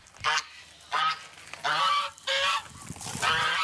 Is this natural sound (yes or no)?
yes